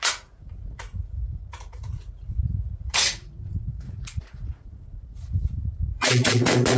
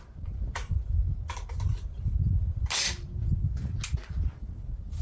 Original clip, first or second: second